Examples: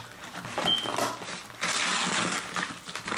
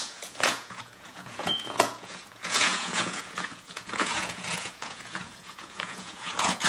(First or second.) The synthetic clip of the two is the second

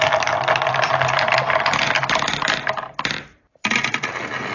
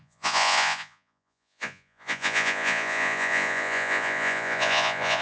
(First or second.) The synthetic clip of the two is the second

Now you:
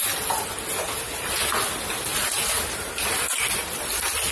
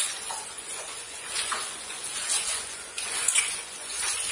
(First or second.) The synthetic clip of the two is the second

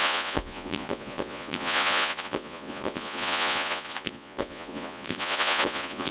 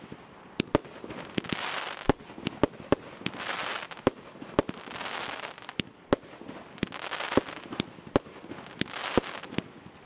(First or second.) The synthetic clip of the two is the first